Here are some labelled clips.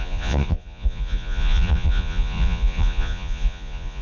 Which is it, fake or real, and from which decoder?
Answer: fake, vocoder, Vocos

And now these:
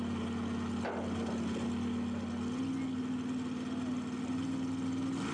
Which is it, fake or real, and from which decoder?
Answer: real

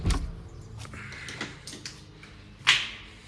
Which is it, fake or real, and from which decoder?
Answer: real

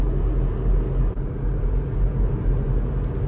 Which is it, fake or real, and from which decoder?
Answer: real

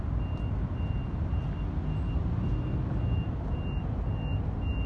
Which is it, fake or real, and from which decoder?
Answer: real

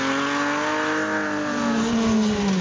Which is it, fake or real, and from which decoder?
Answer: real